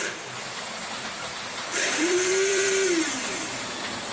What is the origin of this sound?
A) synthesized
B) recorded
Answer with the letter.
A